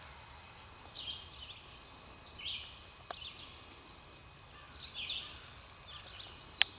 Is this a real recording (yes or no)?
yes